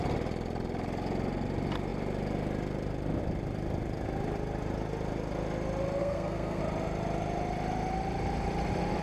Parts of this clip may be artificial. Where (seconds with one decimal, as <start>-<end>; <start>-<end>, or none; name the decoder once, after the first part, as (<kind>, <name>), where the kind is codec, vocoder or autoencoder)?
6.0-6.6 (codec, SNAC)